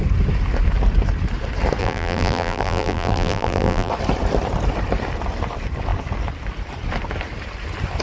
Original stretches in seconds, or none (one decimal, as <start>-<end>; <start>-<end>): 0.0-1.8; 3.9-8.0